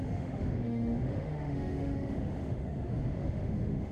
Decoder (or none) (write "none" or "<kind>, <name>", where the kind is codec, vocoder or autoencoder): autoencoder, DAC-VAE